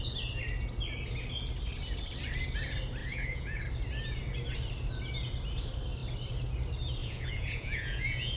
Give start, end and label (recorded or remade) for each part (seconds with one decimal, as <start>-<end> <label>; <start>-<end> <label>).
0.0-3.0 recorded; 3.0-3.6 remade; 3.6-7.0 recorded; 7.0-8.4 remade